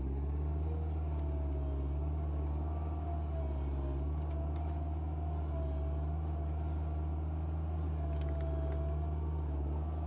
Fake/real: real